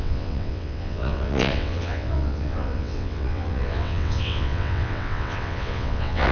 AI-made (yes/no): yes